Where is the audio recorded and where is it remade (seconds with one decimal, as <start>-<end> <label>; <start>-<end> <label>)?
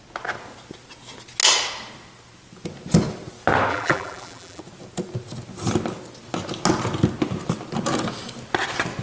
0.0-3.7 recorded; 3.7-4.6 remade; 4.6-9.0 recorded